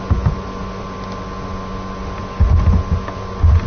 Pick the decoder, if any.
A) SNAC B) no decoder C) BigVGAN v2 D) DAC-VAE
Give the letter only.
B